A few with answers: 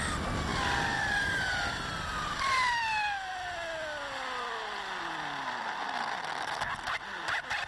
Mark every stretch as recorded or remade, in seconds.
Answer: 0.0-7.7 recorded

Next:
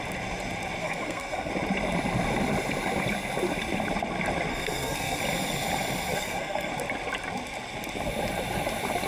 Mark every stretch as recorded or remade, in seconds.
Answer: 0.0-0.8 recorded; 0.8-1.5 remade; 1.5-4.5 recorded; 4.5-5.2 remade; 5.2-6.1 recorded; 6.1-6.7 remade; 6.7-9.1 recorded